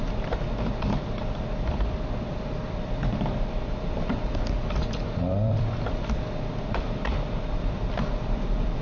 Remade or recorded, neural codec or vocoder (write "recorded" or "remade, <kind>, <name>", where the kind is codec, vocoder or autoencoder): remade, vocoder, BigVGAN v2